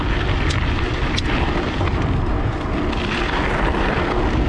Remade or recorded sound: recorded